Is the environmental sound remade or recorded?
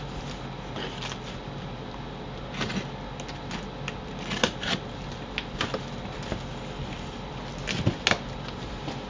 recorded